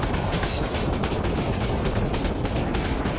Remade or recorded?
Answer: recorded